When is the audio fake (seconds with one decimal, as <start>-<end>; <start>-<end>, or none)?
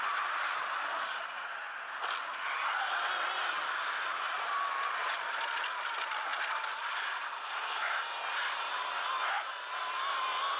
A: none